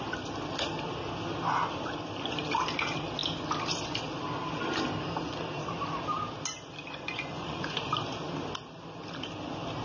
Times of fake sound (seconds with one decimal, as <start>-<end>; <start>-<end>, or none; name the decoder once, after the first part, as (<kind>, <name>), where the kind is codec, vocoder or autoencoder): 6.9-7.8 (vocoder, Vocos)